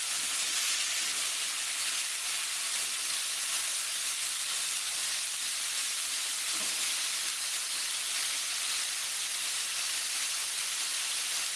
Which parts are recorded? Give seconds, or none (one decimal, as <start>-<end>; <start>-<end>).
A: 0.0-2.7; 5.1-11.6